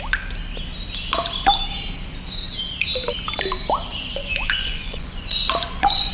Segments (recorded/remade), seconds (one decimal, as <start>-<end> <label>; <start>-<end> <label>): 0.0-3.9 recorded; 3.9-6.1 remade